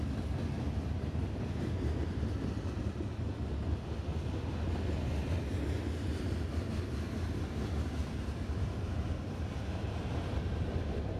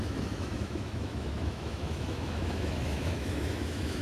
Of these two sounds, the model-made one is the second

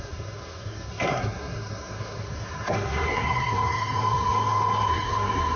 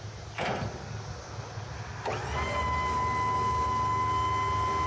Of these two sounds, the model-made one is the first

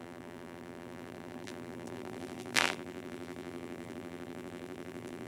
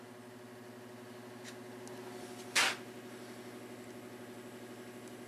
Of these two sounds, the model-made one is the first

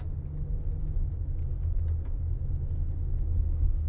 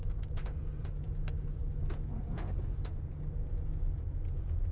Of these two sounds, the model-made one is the second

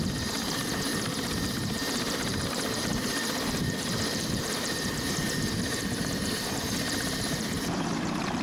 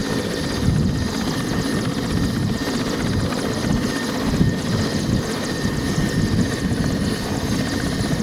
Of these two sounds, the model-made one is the first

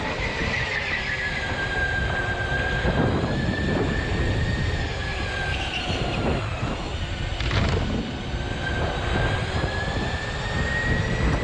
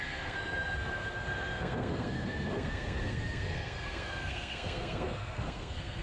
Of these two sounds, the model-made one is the second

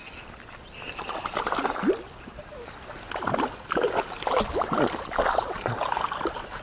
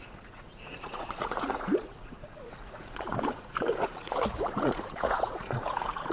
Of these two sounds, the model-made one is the second